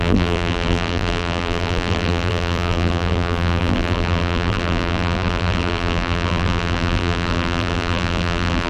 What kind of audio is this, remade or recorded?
remade